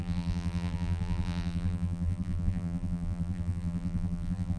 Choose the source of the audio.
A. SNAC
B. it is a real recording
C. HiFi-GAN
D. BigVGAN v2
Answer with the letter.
D